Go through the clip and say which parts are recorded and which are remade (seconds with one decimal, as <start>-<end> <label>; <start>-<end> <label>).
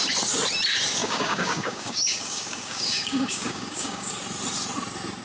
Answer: 0.0-1.0 recorded; 1.0-4.1 remade; 4.1-5.2 recorded